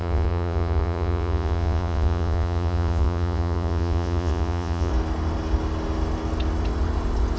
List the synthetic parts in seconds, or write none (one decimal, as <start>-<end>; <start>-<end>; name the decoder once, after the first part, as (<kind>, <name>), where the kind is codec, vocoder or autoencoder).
0.0-4.9 (vocoder, Vocos)